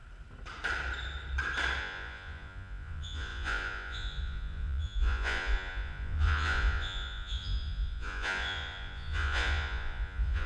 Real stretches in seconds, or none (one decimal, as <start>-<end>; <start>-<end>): 0.0-1.8